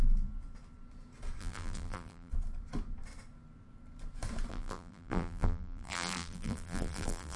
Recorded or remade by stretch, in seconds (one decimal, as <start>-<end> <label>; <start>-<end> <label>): 0.0-1.4 recorded; 1.4-2.3 remade; 2.3-4.5 recorded; 4.5-7.4 remade